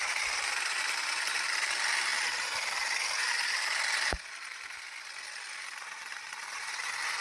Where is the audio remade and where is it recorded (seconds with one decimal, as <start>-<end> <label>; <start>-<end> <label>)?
0.0-7.2 recorded